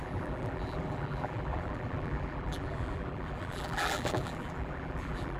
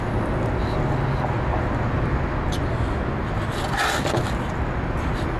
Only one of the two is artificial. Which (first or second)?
first